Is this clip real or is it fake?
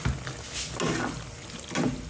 real